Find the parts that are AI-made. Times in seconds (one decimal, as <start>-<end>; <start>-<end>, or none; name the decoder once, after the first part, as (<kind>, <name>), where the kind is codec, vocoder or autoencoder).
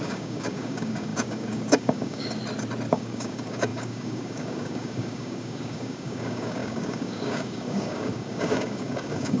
0.0-2.4 (codec, DAC); 2.9-9.4